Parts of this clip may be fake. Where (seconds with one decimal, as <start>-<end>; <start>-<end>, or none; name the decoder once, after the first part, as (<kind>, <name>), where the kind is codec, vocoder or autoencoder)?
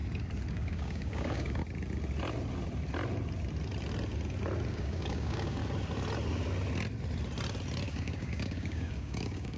0.5-1.6 (codec, DAC); 4.7-5.6; 7.9-9.6